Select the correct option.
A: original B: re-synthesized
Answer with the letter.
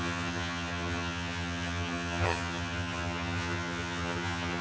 B